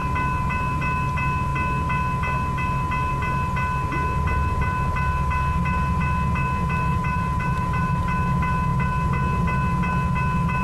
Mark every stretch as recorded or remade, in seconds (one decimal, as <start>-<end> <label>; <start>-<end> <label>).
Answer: 0.0-6.9 recorded; 6.9-8.1 remade; 8.1-10.6 recorded